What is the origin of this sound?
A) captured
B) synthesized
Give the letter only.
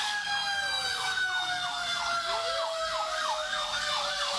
B